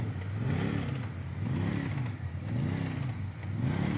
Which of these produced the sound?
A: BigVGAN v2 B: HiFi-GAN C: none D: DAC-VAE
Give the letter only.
C